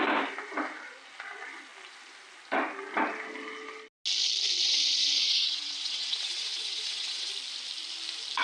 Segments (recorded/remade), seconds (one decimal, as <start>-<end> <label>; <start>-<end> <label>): 0.0-4.6 recorded; 4.6-7.3 remade; 7.3-8.4 recorded